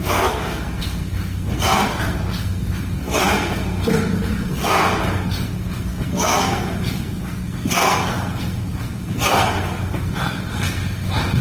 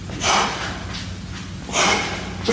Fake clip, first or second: first